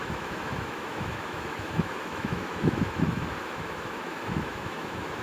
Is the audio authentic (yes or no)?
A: no